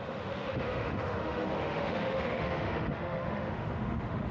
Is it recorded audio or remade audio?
remade